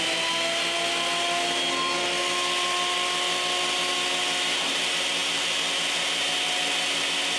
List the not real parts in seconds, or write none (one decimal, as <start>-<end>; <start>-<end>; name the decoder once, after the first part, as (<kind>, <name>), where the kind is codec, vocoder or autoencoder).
none